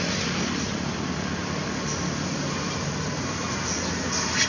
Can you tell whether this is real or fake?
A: real